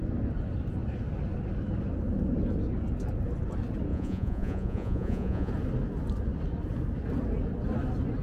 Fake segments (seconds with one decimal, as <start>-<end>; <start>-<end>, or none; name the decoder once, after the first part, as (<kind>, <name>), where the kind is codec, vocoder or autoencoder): 3.9-5.5 (vocoder, Vocos)